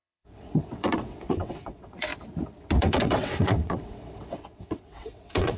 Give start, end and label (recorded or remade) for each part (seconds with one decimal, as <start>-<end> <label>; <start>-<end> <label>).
0.0-2.1 remade; 2.1-2.8 recorded; 2.8-5.6 remade